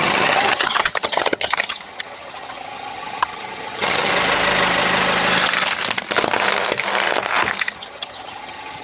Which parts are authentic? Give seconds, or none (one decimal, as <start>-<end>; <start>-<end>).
4.1-7.6